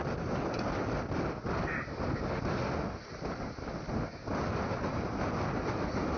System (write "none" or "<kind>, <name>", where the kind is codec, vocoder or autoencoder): none